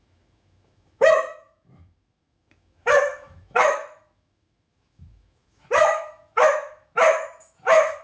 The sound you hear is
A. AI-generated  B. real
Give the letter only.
A